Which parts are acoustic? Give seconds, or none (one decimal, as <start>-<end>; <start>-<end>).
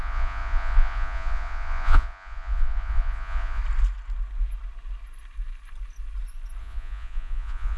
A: 3.6-6.6